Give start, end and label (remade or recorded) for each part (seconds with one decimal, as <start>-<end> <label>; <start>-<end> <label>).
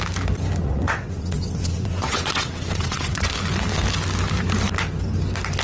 0.0-0.6 recorded; 0.6-3.3 remade; 3.3-5.6 recorded